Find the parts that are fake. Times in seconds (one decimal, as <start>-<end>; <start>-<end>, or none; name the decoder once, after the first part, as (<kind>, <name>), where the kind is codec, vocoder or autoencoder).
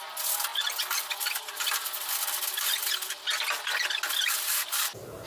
none